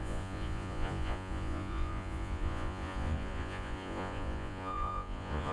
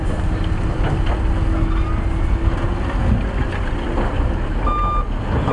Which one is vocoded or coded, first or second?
first